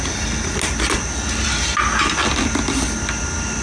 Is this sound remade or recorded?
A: recorded